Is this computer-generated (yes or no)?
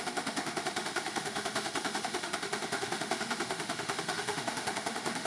yes